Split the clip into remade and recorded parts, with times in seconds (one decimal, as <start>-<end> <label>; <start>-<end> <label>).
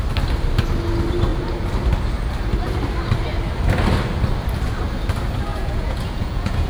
0.0-5.5 recorded; 5.5-6.7 remade